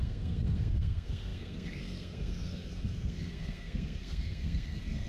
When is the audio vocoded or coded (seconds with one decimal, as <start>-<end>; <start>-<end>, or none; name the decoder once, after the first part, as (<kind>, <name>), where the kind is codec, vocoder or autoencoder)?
0.0-5.1 (codec, SNAC)